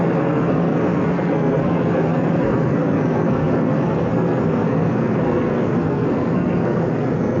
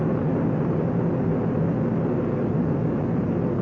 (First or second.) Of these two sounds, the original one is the second